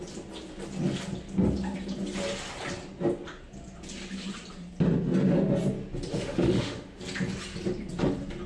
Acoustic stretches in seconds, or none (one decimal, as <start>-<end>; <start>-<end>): 0.0-6.1; 7.0-8.5